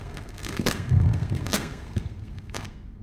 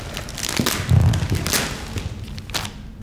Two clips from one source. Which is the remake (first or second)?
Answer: first